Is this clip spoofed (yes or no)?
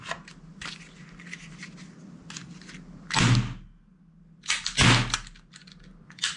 no